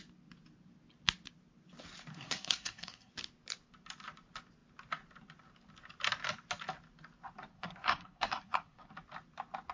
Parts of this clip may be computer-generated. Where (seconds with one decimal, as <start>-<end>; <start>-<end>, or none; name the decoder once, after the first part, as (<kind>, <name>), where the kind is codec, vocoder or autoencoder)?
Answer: 2.1-3.1 (codec, SNAC); 7.5-8.9